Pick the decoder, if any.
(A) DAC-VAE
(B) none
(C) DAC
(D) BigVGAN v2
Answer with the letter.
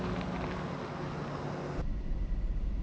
B